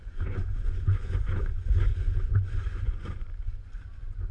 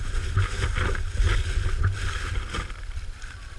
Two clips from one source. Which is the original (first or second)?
second